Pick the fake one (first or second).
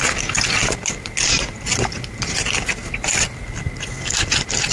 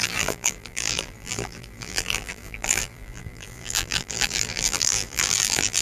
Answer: second